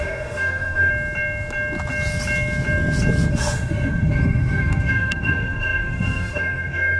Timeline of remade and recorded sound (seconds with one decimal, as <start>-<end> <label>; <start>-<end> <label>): 0.0-0.9 remade; 0.9-3.3 recorded; 3.3-7.0 remade